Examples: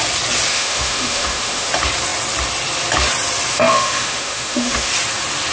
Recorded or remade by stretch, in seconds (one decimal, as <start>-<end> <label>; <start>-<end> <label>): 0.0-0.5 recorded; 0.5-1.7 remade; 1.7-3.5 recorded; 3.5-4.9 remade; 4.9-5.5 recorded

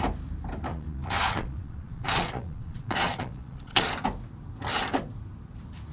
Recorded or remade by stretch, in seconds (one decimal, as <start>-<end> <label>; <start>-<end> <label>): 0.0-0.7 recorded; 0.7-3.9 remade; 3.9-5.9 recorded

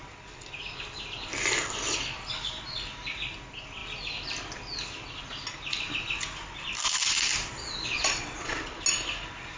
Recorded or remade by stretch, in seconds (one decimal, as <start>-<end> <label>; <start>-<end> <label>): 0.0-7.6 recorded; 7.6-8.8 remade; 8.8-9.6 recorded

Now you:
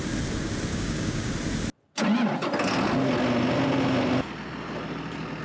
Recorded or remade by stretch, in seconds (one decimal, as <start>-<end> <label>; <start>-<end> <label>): 0.0-0.7 recorded; 0.7-1.3 remade; 1.3-5.4 recorded

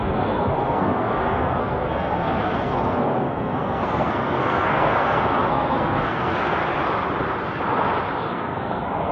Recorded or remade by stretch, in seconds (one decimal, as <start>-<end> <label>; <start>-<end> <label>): 0.0-6.6 remade; 6.6-8.2 recorded; 8.2-9.1 remade

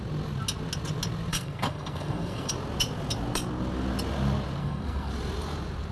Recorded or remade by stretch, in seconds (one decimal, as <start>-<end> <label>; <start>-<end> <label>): 0.0-1.3 recorded; 1.3-2.5 remade; 2.5-4.6 recorded; 4.6-5.1 remade; 5.1-5.9 recorded

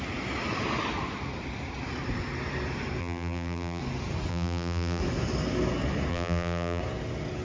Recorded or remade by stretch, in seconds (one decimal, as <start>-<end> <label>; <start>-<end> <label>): 0.0-3.0 recorded; 3.0-3.8 remade; 3.8-4.3 recorded; 4.3-5.0 remade; 5.0-6.1 recorded; 6.1-6.8 remade; 6.8-7.4 recorded

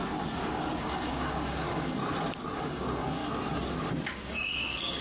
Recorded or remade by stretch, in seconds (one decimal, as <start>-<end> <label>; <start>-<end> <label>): 0.0-0.8 recorded; 0.8-2.0 remade; 2.0-2.6 recorded; 2.6-3.2 remade; 3.2-4.3 recorded; 4.3-5.0 remade